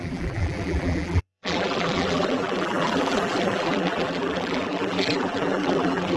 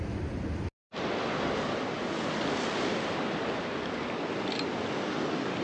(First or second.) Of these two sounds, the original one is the second